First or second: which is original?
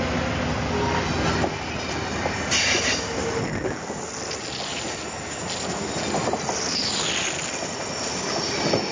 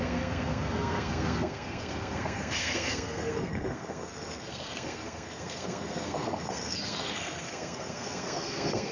first